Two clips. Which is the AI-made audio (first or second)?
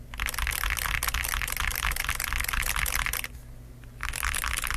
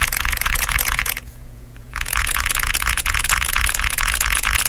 second